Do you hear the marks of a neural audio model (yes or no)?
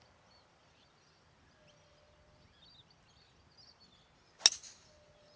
no